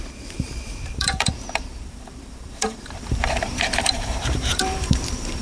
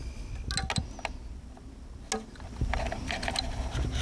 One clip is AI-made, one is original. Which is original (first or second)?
second